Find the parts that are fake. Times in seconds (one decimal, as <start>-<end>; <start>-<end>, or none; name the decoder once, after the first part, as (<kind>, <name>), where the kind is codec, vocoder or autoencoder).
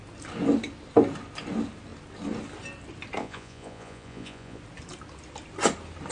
3.2-4.6 (vocoder, Vocos)